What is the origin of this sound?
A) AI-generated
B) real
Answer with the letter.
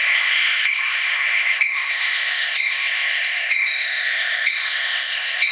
A